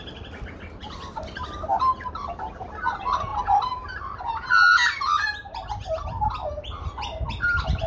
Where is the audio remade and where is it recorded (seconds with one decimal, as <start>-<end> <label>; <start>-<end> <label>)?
0.0-7.9 recorded